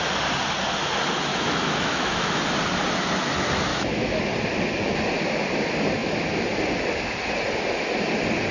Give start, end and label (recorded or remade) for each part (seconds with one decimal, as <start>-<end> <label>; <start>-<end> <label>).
0.0-1.3 recorded; 1.3-2.4 remade; 2.4-3.7 recorded; 3.7-4.2 remade; 4.2-8.5 recorded